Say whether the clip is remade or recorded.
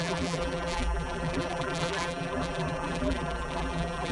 remade